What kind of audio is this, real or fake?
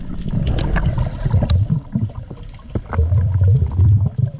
real